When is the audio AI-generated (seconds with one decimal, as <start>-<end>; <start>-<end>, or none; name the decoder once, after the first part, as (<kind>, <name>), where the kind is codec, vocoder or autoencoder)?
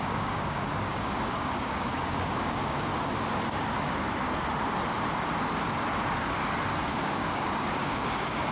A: 0.0-2.9 (codec, DAC); 6.8-8.5